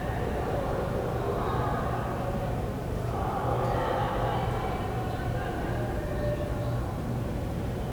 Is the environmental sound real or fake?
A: real